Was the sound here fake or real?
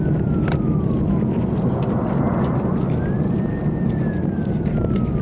real